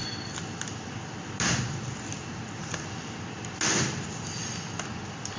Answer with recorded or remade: recorded